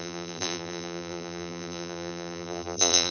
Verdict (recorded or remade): remade